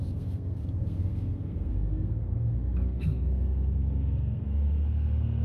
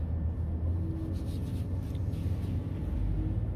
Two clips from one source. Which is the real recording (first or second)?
second